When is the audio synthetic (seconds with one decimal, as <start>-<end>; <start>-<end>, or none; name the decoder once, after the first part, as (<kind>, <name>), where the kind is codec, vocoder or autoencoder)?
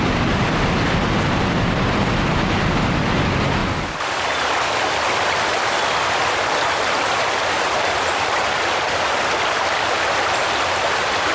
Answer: none